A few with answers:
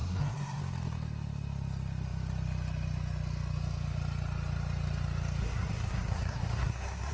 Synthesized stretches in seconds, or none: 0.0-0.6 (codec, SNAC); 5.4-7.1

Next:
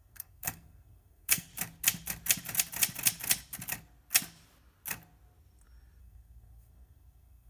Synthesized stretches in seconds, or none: 0.0-1.5 (codec, SNAC); 6.0-7.5

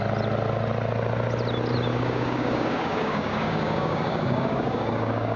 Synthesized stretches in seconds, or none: 1.9-5.4 (codec, DAC)

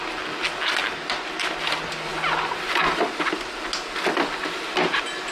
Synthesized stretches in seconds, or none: 0.8-1.3 (vocoder, BigVGAN v2)

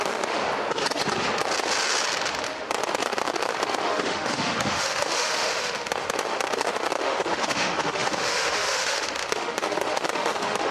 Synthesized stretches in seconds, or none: 0.0-0.4 (autoencoder, DAC-VAE); 2.6-10.7

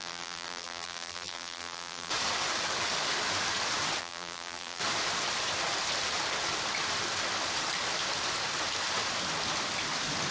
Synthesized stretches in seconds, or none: 0.0-2.1 (vocoder, BigVGAN v2); 4.0-4.8